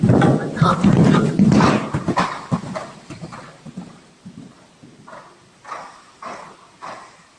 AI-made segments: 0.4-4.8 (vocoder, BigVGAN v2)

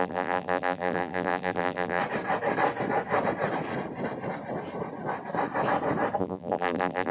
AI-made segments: 0.0-2.0 (vocoder, BigVGAN v2); 6.2-7.1